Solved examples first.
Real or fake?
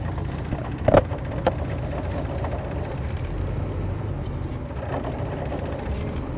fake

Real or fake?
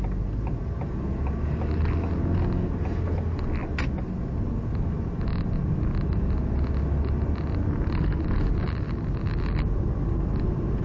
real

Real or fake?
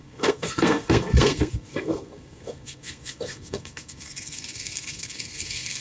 fake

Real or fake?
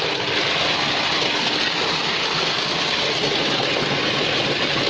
real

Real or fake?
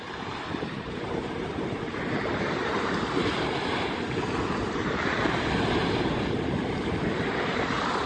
fake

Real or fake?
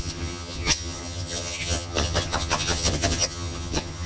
fake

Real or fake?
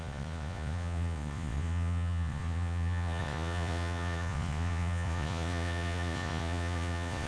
fake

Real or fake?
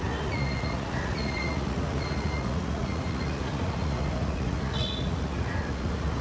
fake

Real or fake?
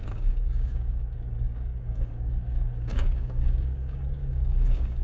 fake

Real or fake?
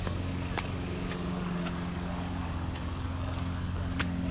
fake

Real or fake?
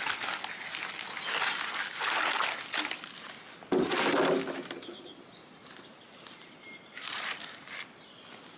real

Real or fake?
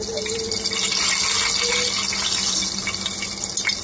real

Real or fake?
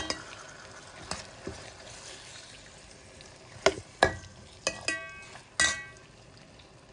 real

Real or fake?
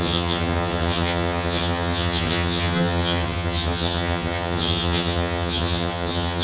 fake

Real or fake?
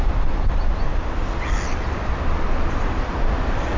real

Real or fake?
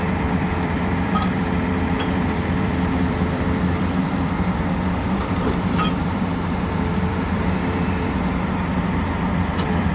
fake